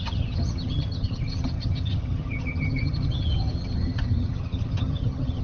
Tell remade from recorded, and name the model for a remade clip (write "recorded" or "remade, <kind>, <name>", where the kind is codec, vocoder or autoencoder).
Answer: remade, vocoder, HiFi-GAN